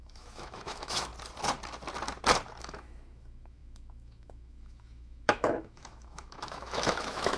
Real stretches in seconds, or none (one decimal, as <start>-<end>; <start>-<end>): 1.1-2.6